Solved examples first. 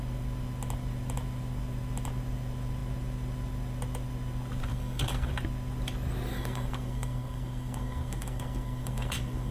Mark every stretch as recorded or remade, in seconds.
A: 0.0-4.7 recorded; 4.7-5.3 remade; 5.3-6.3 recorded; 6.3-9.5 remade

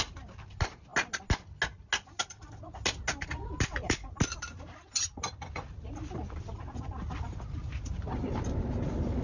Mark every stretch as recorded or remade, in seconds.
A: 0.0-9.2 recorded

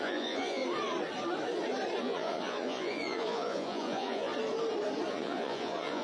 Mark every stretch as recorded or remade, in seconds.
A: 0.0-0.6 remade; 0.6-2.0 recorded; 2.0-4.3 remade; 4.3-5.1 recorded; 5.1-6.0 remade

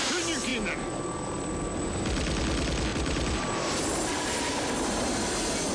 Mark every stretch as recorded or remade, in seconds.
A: 0.0-2.9 recorded; 2.9-5.2 remade; 5.2-5.7 recorded

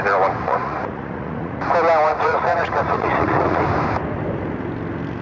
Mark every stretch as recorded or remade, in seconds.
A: 0.0-0.4 recorded; 0.4-1.6 remade; 1.6-2.1 recorded; 2.1-3.6 remade; 3.6-5.2 recorded

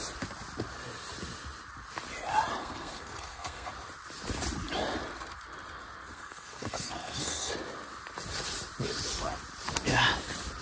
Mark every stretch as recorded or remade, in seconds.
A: 0.0-2.6 recorded; 2.6-3.7 remade; 3.7-6.1 recorded; 6.1-7.5 remade; 7.5-10.6 recorded